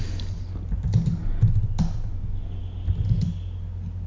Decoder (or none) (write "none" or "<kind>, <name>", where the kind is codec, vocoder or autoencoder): none